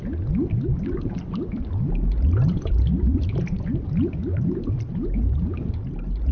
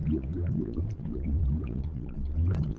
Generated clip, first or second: second